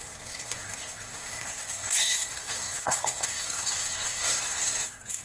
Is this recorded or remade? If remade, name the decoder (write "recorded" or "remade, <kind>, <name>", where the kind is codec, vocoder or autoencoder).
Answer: remade, codec, SNAC